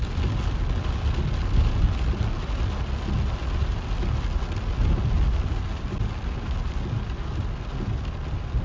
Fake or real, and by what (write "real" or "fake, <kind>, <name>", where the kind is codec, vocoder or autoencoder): real